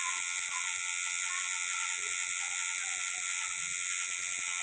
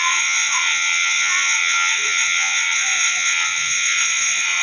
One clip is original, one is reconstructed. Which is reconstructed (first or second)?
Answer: second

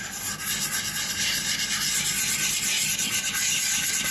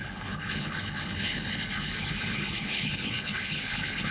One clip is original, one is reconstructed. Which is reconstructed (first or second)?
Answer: second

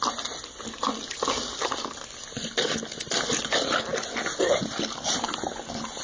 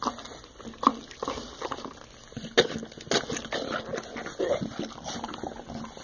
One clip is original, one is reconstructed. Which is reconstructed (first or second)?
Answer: first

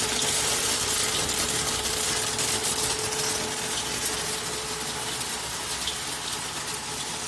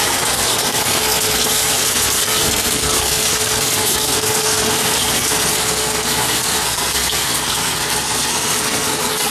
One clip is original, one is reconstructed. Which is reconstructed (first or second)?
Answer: second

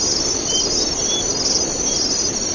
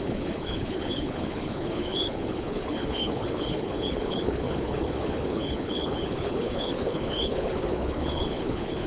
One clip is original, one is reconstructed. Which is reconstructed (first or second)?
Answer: second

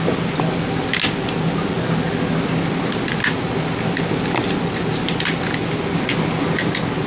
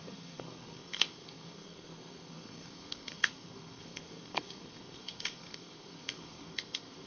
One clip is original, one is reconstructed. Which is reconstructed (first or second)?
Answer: second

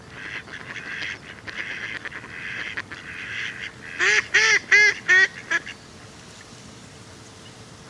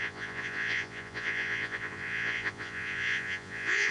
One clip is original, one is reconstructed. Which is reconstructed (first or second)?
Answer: second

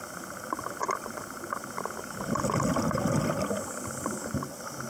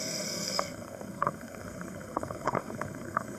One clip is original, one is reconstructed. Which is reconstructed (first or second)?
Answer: second